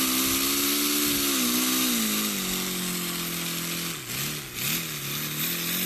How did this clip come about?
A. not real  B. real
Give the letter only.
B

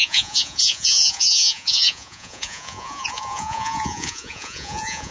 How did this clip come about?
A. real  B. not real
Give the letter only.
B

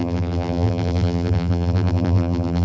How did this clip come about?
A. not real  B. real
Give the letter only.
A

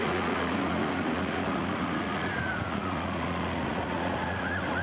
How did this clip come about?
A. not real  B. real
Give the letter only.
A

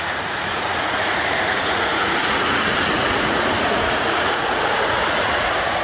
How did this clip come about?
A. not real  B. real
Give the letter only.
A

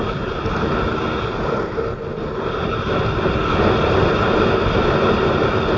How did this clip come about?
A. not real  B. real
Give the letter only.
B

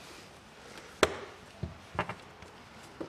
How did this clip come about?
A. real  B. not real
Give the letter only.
A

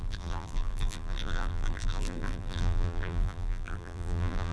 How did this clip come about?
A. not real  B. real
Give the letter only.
A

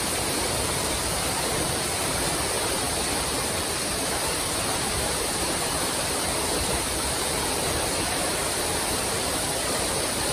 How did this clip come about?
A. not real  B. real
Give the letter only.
A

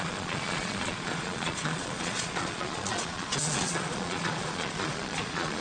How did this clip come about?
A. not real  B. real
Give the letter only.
A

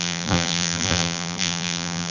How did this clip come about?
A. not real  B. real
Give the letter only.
A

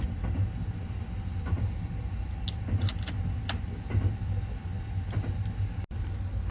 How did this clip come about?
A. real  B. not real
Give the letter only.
A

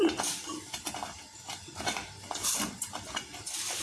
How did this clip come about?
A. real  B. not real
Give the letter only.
A